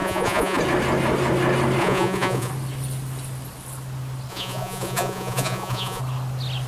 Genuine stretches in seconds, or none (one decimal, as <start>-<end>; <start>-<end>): 0.6-1.8; 2.5-4.3; 6.0-6.7

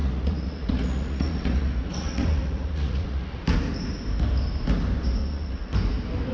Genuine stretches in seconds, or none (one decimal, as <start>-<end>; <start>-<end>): 3.4-5.2; 5.7-6.3

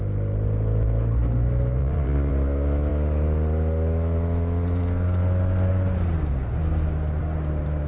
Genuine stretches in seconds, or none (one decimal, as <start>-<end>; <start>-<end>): 0.0-1.8; 2.3-7.9

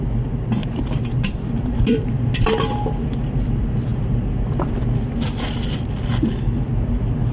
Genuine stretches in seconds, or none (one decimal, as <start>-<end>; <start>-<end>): 0.0-0.6; 2.3-7.3

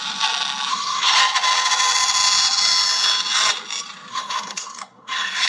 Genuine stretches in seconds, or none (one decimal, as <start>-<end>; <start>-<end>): 0.0-0.7; 1.2-4.1